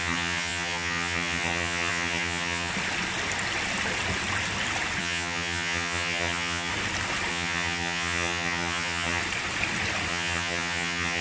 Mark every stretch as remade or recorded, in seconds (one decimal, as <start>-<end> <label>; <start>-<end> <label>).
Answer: 0.0-2.7 remade; 2.7-5.0 recorded; 5.0-6.7 remade; 6.7-7.3 recorded; 7.3-9.2 remade; 9.2-10.1 recorded; 10.1-11.2 remade